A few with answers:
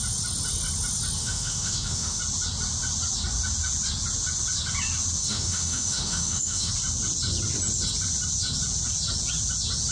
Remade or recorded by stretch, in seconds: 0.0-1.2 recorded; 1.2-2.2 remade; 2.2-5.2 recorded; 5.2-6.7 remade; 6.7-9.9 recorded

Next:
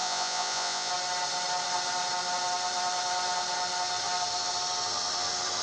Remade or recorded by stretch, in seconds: 0.0-0.9 remade; 0.9-5.6 recorded

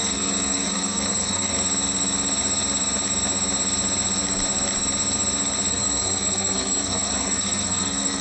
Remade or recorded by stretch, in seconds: 0.0-1.5 remade; 1.5-5.7 recorded; 5.7-8.2 remade